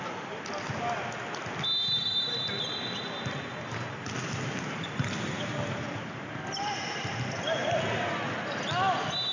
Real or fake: real